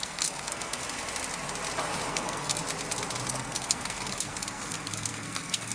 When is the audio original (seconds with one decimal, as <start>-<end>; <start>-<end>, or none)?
0.8-2.1; 2.6-3.3